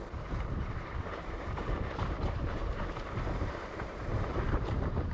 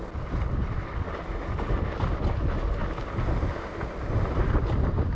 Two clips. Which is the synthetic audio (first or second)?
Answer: first